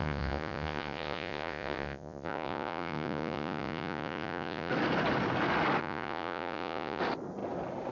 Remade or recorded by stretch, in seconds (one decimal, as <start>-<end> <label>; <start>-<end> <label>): 0.0-4.7 remade; 4.7-5.8 recorded; 5.8-7.0 remade; 7.0-7.9 recorded